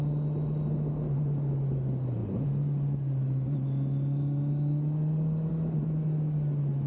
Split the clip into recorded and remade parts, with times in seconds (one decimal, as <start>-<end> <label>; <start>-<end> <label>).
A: 0.0-6.9 recorded